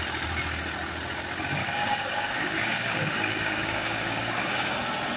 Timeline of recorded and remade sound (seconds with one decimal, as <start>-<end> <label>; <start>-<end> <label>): 0.0-1.6 recorded; 1.6-4.7 remade; 4.7-5.2 recorded